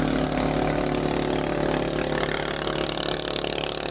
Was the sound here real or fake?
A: real